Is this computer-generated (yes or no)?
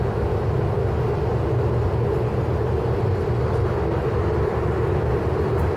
no